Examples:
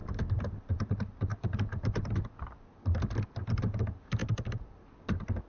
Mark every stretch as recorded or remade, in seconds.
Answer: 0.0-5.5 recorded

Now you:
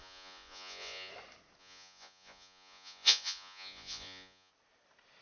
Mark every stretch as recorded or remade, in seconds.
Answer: 0.0-1.1 remade; 1.1-1.6 recorded; 1.6-4.5 remade; 4.5-5.2 recorded

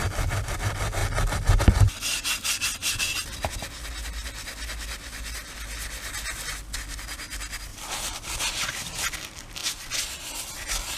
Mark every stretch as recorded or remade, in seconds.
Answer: 0.0-7.7 recorded; 7.7-8.7 remade; 8.7-11.0 recorded

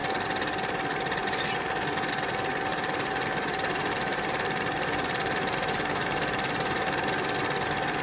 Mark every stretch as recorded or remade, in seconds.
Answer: 0.0-2.7 recorded; 2.7-7.1 remade; 7.1-8.0 recorded